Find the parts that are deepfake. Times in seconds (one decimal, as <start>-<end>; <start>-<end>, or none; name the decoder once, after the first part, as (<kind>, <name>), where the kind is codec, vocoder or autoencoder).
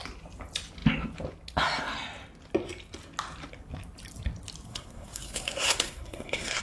4.7-6.6 (codec, SNAC)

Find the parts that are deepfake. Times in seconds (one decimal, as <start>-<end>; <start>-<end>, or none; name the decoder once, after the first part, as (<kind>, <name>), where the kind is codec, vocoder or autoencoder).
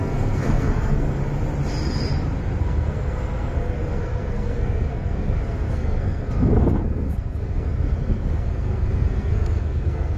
0.0-1.2 (codec, SNAC); 2.6-10.2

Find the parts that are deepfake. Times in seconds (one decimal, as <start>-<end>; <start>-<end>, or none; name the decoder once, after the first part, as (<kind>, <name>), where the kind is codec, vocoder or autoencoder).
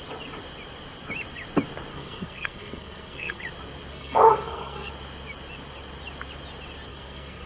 1.9-3.4 (codec, SNAC); 3.9-4.9; 6.9-7.5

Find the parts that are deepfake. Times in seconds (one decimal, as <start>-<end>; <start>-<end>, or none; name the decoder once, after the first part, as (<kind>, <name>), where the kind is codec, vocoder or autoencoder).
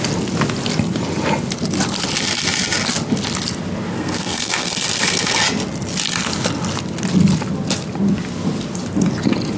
3.9-5.4 (codec, SNAC)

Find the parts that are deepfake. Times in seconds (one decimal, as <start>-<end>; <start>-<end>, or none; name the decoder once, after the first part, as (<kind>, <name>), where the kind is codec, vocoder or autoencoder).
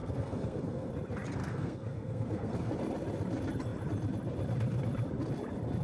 0.0-0.9 (codec, SNAC); 1.4-2.7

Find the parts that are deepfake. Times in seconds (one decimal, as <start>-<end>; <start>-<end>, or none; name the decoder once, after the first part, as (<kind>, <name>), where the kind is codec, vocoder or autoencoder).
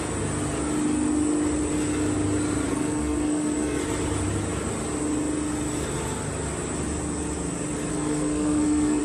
2.7-3.8 (codec, SNAC); 7.9-9.0